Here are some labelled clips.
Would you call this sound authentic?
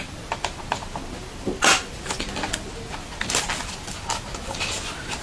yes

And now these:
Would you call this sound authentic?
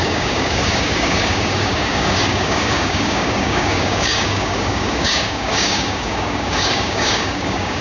no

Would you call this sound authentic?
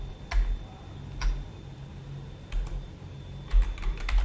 yes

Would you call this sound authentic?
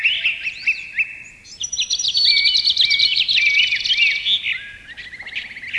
yes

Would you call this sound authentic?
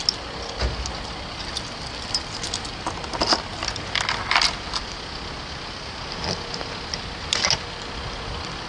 yes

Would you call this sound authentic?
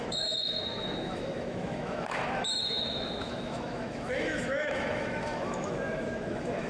no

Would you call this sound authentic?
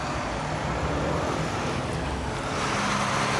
yes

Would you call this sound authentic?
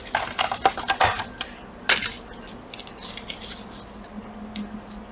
yes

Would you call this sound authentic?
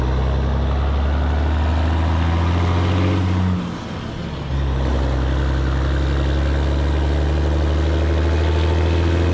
yes